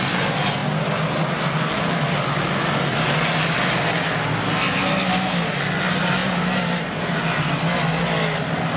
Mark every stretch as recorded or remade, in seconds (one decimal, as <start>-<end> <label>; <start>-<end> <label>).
0.0-6.2 recorded; 6.2-7.2 remade; 7.2-8.8 recorded